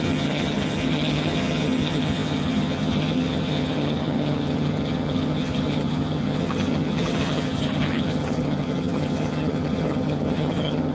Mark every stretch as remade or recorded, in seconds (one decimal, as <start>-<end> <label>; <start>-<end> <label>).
0.0-10.9 remade